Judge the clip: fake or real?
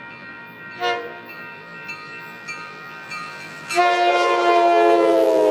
fake